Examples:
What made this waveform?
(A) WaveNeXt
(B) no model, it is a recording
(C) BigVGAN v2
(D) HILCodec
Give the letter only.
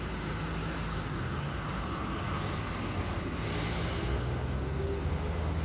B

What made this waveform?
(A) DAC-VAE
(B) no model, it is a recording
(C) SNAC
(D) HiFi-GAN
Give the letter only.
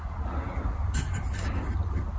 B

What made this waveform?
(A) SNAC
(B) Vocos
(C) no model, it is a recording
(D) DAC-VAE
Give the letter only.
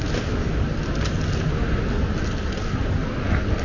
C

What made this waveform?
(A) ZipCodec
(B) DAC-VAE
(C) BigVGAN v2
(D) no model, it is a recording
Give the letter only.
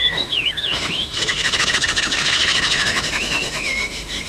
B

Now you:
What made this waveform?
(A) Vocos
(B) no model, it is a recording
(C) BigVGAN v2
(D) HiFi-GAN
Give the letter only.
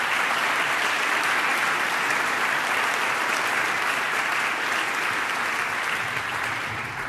B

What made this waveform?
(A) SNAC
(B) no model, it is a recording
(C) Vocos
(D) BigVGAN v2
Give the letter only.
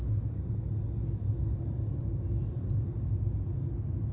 B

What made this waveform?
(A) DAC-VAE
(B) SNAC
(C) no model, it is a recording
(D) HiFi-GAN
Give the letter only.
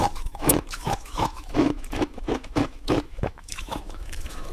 A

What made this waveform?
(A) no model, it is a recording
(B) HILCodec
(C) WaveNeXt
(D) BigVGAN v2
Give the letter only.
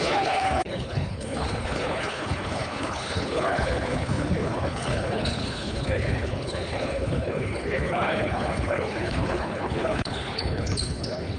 B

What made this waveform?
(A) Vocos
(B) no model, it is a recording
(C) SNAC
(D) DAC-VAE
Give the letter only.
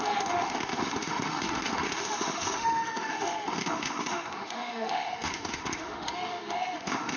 D